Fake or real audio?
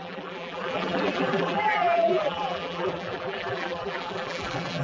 fake